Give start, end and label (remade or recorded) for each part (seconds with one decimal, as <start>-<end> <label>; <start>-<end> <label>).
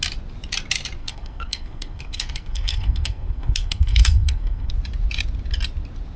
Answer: 0.0-1.0 recorded; 1.0-4.7 remade; 4.7-6.2 recorded